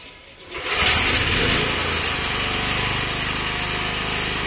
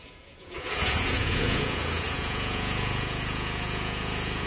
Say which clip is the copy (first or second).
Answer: second